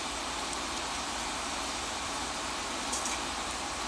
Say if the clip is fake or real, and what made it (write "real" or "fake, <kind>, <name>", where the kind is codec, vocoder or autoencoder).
fake, vocoder, BigVGAN v2